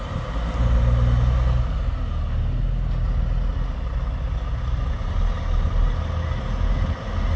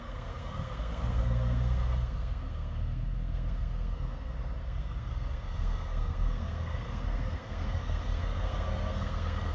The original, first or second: first